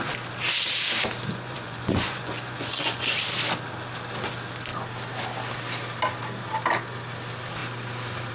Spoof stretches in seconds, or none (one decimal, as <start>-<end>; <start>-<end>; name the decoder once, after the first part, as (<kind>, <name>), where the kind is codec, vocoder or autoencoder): 1.2-3.0 (vocoder, Vocos)